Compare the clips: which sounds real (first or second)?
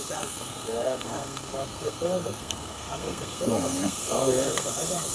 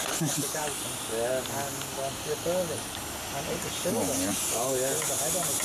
second